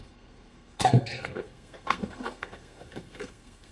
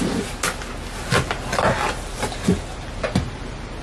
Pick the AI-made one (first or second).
first